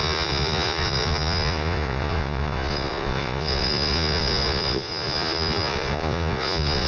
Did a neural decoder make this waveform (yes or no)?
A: yes